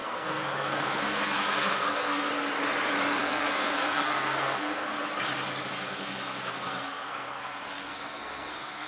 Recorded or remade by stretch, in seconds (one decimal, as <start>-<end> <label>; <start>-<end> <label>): 0.0-2.3 remade; 2.3-3.2 recorded; 3.2-4.9 remade; 4.9-5.7 recorded; 5.7-8.9 remade